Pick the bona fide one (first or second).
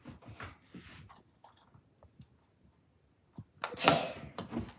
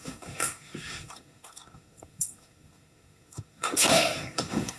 first